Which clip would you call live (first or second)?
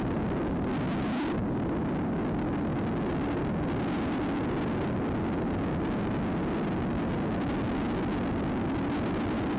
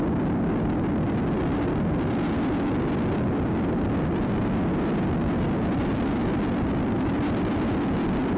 first